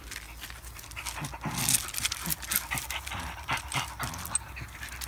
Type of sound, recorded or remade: recorded